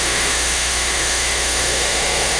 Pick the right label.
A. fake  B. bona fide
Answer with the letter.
A